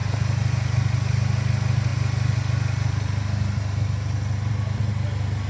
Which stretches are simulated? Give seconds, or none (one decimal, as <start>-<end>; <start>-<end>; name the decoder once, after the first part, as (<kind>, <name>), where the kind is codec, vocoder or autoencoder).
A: none